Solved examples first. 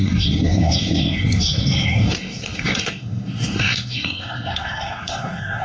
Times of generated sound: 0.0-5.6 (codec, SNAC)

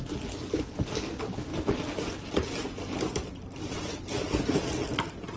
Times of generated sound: none

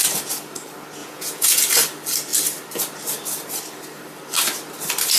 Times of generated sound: 1.0-1.6 (vocoder, Vocos)